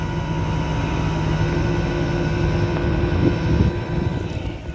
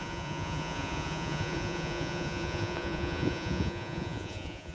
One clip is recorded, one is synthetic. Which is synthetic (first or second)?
second